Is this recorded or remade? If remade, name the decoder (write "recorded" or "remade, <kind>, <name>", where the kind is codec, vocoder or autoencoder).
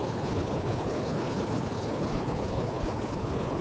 remade, codec, HILCodec